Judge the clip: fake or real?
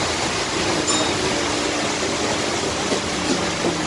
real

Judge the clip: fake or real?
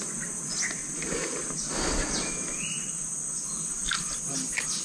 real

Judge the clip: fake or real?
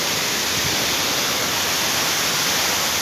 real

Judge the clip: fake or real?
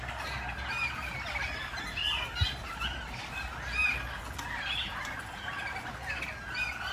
real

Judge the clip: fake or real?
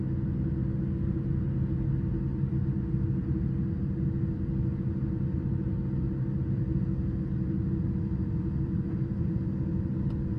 real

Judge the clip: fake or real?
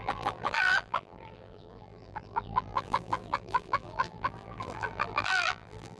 fake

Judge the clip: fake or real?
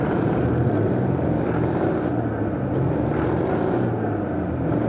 real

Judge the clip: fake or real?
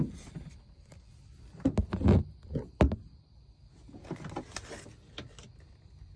real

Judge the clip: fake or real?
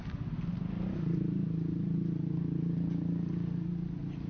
real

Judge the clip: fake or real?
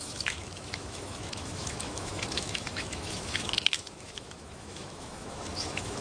fake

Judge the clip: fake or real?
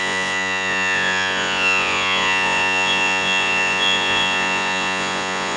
fake